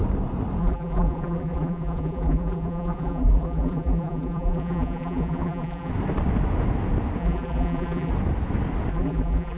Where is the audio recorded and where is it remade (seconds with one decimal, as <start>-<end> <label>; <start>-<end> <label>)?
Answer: 0.0-0.6 recorded; 0.6-5.9 remade; 5.9-7.2 recorded; 7.2-8.1 remade; 8.1-8.9 recorded; 8.9-9.6 remade